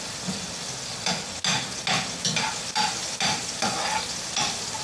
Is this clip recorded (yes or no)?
yes